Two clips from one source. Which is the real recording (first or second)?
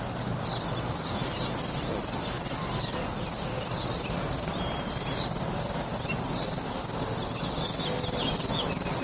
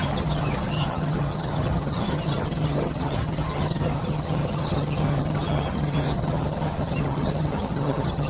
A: first